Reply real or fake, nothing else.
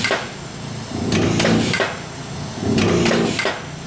real